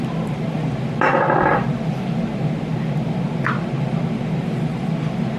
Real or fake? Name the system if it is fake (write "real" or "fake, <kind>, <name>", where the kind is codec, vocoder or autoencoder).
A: real